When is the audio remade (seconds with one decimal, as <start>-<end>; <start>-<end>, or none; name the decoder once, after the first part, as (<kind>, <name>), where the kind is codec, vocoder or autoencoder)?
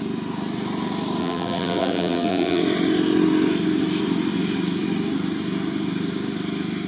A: 1.2-2.6 (vocoder, BigVGAN v2)